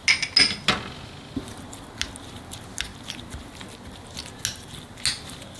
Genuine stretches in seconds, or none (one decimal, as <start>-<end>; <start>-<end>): 0.0-5.6